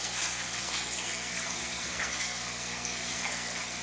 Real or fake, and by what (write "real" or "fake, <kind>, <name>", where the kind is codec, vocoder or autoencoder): fake, codec, SNAC